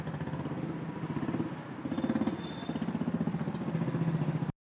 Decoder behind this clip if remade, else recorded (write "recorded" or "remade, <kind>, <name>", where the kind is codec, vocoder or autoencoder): recorded